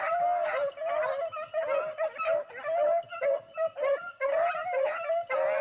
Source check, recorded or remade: recorded